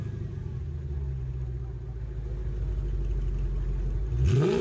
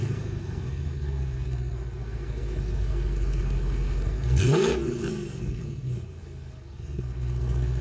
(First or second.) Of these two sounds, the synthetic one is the second